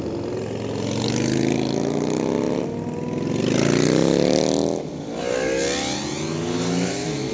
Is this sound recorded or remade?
recorded